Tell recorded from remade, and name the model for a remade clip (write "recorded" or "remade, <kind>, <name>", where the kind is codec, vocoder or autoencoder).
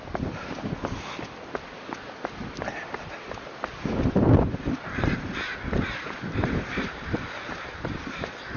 recorded